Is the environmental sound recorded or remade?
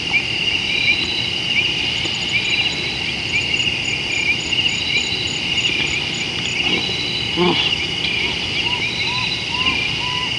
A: recorded